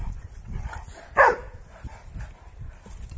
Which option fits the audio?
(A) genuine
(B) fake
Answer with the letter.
A